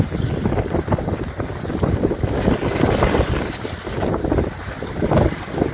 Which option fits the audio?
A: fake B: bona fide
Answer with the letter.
B